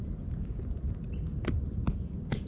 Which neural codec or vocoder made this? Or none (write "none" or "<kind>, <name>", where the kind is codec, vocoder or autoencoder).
none